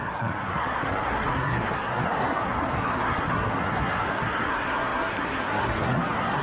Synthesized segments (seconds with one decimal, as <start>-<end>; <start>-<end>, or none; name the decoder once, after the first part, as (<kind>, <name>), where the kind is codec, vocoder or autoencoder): 0.0-6.4 (codec, SNAC)

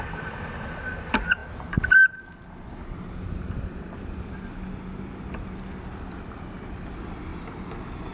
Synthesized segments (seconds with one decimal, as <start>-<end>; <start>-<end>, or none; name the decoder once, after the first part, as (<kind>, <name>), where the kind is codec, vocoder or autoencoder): none

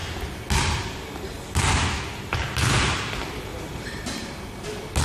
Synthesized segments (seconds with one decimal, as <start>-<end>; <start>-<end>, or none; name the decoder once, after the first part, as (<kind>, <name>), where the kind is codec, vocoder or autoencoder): 3.5-4.3 (vocoder, BigVGAN v2)

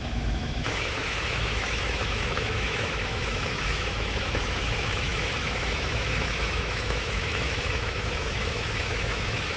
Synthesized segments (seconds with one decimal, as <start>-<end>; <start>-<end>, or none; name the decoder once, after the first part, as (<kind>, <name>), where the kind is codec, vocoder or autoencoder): 0.0-9.6 (autoencoder, DAC-VAE)

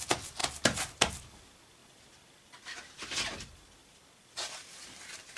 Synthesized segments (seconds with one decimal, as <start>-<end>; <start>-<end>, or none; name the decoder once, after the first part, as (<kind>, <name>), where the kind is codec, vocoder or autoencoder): 1.8-3.0 (vocoder, BigVGAN v2); 3.8-5.0